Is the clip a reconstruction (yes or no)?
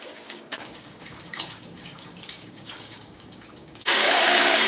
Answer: yes